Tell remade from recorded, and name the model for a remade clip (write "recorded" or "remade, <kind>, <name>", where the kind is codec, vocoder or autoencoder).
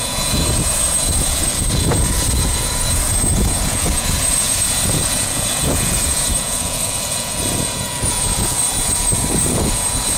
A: remade, vocoder, Vocos